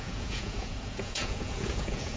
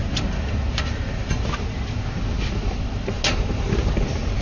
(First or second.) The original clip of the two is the second